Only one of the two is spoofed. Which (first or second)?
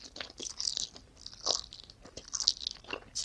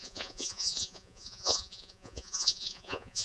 second